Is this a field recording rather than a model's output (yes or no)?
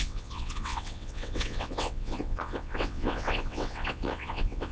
no